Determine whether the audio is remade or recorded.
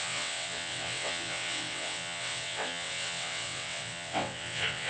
remade